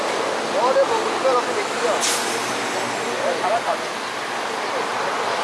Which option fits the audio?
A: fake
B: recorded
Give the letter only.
B